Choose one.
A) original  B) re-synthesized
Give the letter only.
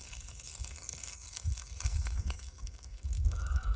B